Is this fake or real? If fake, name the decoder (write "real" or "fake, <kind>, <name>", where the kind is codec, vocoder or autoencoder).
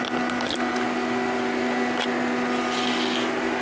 real